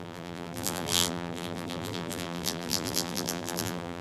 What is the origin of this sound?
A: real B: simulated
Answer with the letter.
B